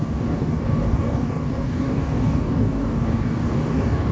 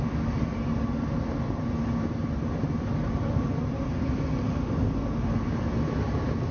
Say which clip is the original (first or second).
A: second